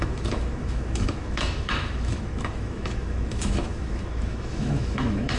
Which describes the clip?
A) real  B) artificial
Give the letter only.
B